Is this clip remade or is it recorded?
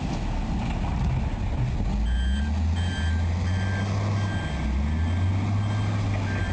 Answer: recorded